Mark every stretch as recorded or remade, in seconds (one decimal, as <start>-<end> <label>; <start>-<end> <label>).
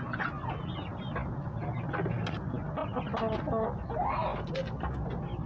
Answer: 0.0-5.5 recorded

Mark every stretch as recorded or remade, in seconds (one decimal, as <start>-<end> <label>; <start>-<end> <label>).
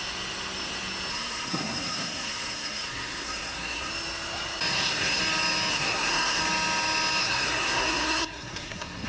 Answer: 0.0-1.1 recorded; 1.1-3.9 remade; 3.9-4.7 recorded; 4.7-5.2 remade; 5.2-5.7 recorded; 5.7-6.4 remade; 6.4-7.2 recorded; 7.2-9.1 remade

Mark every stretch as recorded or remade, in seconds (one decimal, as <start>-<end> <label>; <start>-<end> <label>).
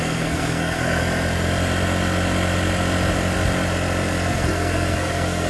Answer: 0.0-1.0 remade; 1.0-4.3 recorded; 4.3-5.5 remade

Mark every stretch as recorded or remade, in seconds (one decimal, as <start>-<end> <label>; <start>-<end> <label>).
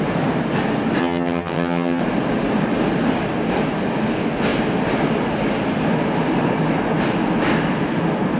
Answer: 0.0-1.0 recorded; 1.0-2.0 remade; 2.0-8.4 recorded